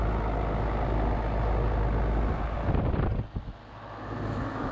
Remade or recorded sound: recorded